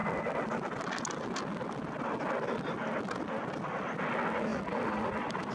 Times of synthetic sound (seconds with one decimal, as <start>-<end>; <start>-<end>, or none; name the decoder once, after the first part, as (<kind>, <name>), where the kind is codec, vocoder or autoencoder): none